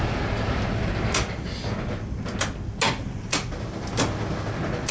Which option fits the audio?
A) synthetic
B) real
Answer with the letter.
B